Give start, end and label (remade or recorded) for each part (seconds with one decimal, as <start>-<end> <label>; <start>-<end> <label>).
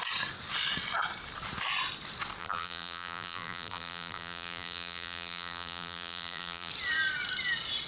0.0-2.4 recorded; 2.4-6.7 remade; 6.7-7.9 recorded